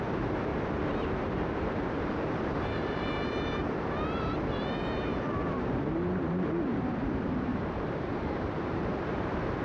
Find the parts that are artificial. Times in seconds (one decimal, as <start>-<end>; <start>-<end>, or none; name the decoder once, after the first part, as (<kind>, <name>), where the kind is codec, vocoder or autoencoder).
0.0-0.5 (vocoder, BigVGAN v2); 1.3-9.6